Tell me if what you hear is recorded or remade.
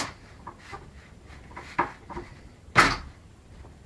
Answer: recorded